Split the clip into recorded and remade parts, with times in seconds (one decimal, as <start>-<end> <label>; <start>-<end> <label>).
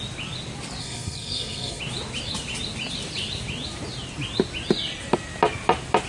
0.0-0.8 recorded; 0.8-1.8 remade; 1.8-6.1 recorded